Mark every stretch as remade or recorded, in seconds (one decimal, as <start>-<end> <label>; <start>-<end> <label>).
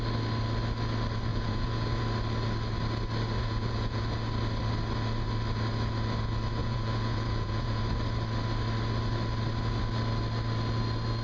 0.0-1.3 recorded; 1.3-2.0 remade; 2.0-3.4 recorded; 3.4-4.0 remade; 4.0-6.6 recorded; 6.6-7.8 remade; 7.8-11.2 recorded